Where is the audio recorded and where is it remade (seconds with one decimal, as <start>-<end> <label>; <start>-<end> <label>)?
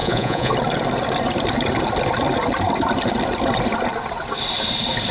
0.0-0.5 remade; 0.5-5.1 recorded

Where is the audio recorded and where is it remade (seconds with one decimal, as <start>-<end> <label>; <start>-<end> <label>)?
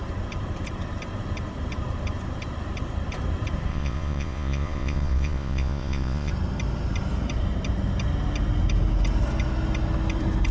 0.0-3.7 recorded; 3.7-6.3 remade; 6.3-10.5 recorded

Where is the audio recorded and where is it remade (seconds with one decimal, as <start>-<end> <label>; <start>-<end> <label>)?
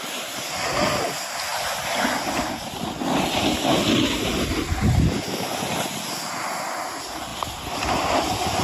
0.0-8.6 recorded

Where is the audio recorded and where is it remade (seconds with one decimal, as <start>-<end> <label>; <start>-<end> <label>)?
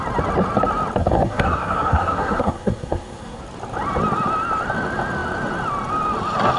0.0-1.0 recorded; 1.0-3.4 remade; 3.4-6.6 recorded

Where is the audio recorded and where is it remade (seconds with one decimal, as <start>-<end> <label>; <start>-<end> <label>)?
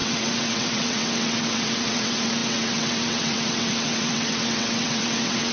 0.0-5.5 remade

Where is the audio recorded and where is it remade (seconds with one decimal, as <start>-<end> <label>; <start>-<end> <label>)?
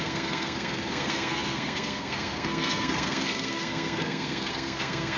0.0-5.2 remade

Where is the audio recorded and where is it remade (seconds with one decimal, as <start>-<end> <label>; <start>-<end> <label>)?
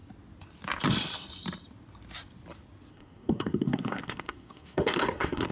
0.0-2.9 recorded; 2.9-5.5 remade